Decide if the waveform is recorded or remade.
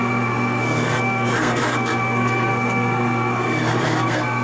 remade